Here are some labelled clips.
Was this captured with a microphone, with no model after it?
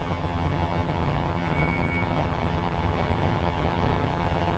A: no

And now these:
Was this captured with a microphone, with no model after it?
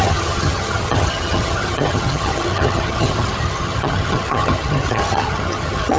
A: no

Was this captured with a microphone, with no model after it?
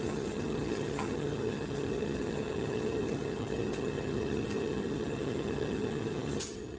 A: no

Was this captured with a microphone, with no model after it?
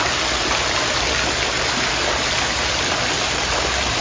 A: yes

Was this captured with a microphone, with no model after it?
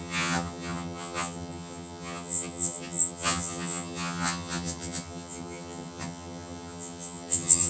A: no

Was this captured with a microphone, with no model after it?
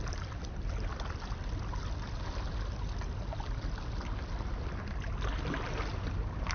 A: yes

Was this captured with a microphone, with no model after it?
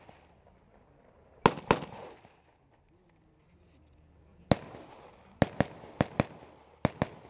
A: yes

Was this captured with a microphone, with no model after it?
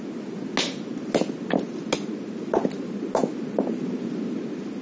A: yes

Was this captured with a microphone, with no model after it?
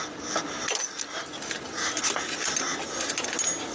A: yes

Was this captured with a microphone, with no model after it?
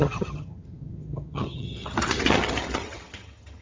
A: no